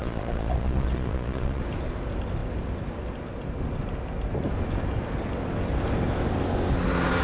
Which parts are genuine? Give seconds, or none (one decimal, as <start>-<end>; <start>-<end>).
1.6-7.2